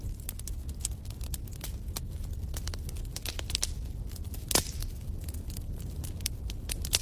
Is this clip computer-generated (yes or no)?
no